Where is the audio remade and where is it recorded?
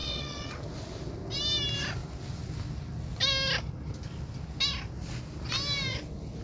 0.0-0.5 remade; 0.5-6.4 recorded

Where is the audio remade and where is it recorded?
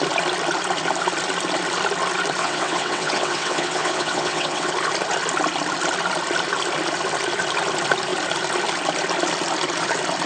0.0-2.4 recorded; 2.4-4.7 remade; 4.7-10.3 recorded